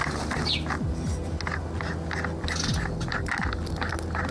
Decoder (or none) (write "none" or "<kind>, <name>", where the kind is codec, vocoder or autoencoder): none